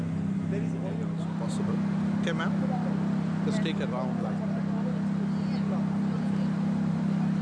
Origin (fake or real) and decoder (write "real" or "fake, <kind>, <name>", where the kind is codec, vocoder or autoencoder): real